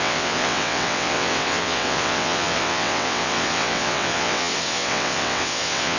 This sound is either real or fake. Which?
fake